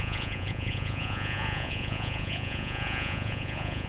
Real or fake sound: fake